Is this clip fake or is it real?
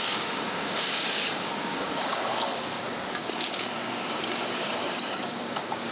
fake